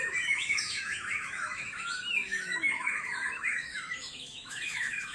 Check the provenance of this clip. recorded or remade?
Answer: remade